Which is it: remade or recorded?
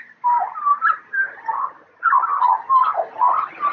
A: recorded